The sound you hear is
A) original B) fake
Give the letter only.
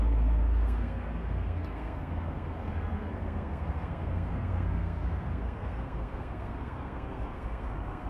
B